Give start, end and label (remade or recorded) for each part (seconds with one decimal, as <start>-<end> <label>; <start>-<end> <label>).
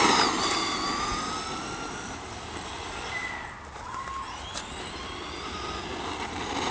0.0-6.7 recorded